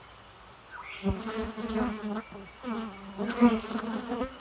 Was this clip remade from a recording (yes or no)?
no